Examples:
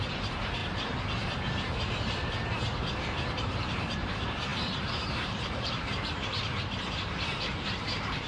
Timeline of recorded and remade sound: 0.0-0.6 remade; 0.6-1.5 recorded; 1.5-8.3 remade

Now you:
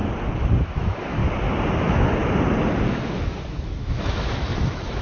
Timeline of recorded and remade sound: 0.0-0.6 recorded; 0.6-1.2 remade; 1.2-1.8 recorded; 1.8-2.2 remade; 2.2-2.9 recorded; 2.9-5.0 remade

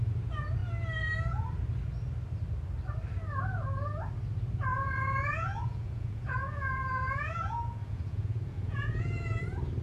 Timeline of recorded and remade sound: 0.0-4.7 recorded; 4.7-9.4 remade; 9.4-9.8 recorded